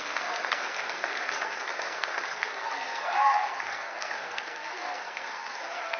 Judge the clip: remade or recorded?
remade